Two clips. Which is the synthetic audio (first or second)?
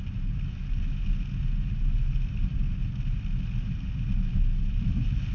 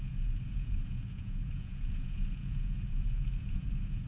second